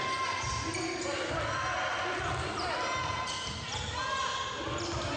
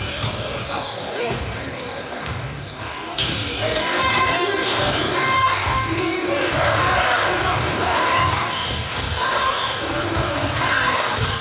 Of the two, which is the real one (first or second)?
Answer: first